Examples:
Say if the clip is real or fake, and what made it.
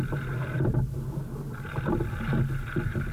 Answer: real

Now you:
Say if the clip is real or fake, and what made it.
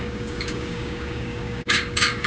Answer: fake, codec, DAC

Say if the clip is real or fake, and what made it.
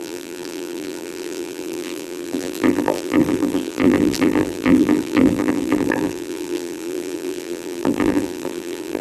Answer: fake, vocoder, BigVGAN v2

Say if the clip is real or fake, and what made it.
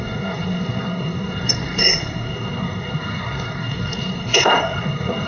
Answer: fake, codec, SNAC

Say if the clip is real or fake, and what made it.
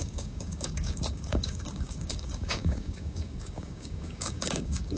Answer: fake, codec, DAC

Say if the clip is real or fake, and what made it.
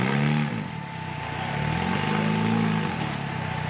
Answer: real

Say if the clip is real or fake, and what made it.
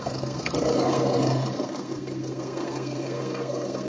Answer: fake, codec, SNAC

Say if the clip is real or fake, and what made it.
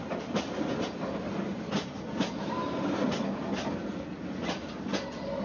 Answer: real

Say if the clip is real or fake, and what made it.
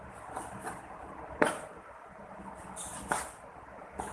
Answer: fake, vocoder, BigVGAN v2